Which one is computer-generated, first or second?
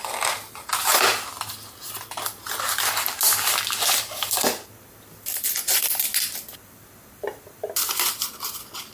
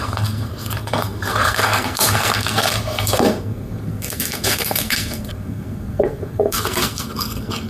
second